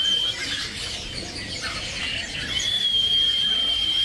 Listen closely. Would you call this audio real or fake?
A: fake